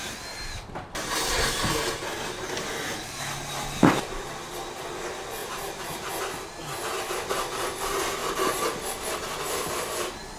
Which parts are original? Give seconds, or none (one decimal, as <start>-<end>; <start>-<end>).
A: 0.0-5.4; 6.1-10.4